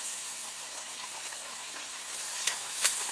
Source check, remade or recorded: remade